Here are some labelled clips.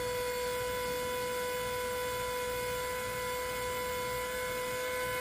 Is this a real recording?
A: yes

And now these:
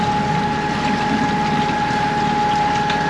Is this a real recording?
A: yes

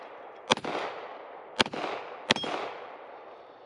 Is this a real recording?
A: yes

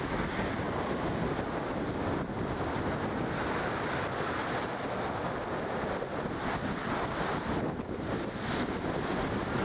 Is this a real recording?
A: yes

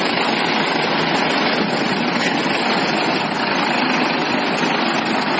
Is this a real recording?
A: yes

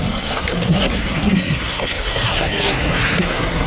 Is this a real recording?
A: no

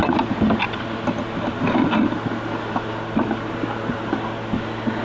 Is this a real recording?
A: yes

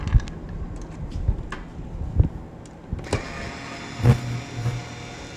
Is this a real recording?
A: yes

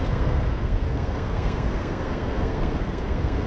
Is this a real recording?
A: no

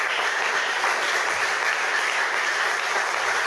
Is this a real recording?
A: yes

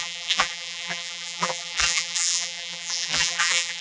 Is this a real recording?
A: no